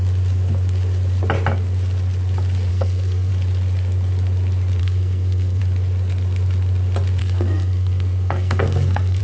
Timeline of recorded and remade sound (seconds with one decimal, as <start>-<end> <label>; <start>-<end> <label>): 0.0-2.7 recorded; 2.7-3.3 remade; 3.3-4.8 recorded; 4.8-5.6 remade; 5.6-7.2 recorded; 7.2-9.2 remade